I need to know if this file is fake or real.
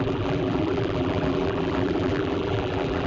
fake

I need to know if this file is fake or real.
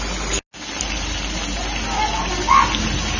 real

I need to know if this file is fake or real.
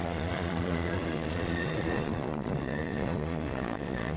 fake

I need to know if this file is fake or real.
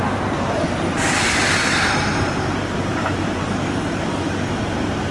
fake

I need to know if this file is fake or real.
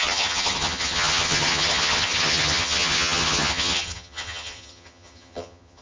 fake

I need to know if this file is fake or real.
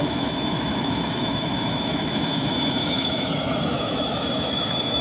fake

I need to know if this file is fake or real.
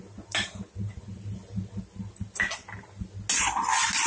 real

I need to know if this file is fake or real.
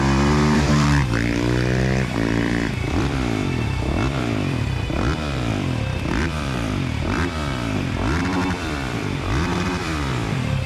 fake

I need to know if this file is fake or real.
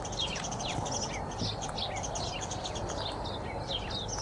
real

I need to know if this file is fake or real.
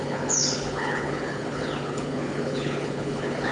fake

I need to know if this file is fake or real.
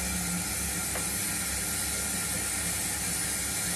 real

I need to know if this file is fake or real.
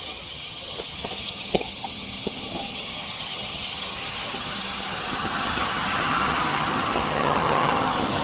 fake